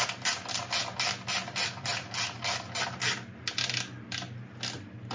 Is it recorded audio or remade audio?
recorded